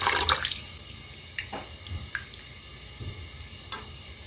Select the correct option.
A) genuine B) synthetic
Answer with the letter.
A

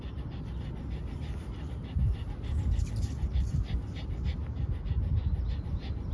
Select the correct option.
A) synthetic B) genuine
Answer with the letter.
B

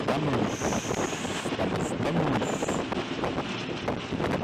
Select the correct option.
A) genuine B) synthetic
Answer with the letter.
A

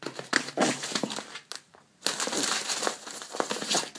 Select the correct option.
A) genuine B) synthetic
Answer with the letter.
A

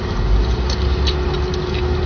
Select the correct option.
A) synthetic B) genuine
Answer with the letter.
B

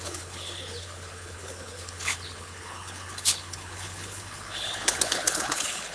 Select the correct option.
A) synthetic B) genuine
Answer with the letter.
A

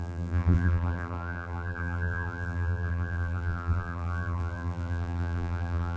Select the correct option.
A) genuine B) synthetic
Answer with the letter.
B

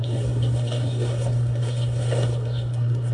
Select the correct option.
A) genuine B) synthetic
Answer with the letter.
B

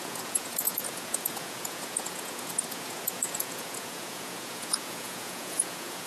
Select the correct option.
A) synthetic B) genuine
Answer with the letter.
A